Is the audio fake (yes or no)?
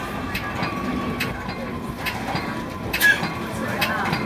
no